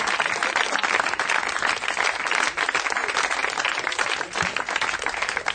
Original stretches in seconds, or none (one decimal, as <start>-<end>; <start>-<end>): 0.0-0.4; 1.7-3.4; 4.2-5.5

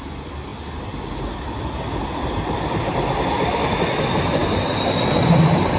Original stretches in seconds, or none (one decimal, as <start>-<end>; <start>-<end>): 0.0-5.8

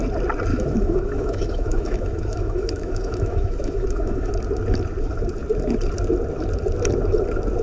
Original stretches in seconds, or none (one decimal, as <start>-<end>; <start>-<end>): 0.0-0.5; 4.3-7.6